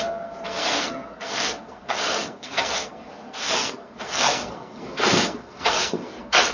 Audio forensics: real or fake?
fake